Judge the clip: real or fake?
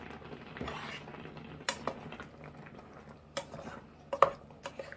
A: real